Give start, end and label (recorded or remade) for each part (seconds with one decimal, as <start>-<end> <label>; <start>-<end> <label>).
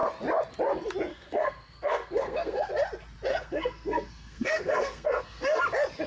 0.0-1.1 recorded; 1.1-2.7 remade; 2.7-3.3 recorded; 3.3-5.6 remade; 5.6-6.1 recorded